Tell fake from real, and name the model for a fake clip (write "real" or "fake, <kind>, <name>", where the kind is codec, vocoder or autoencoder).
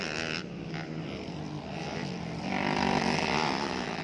real